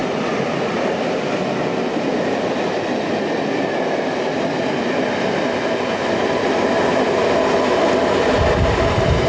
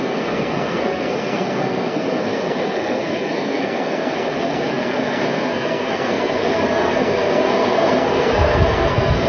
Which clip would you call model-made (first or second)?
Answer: second